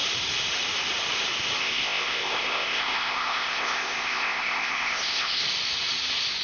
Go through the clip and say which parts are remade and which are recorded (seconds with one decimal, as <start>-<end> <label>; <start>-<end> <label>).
0.0-1.6 recorded; 1.6-5.4 remade; 5.4-6.4 recorded